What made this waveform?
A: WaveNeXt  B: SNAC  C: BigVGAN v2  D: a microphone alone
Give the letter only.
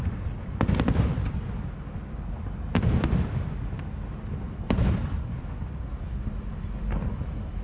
D